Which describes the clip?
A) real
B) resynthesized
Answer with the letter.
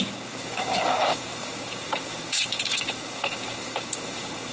B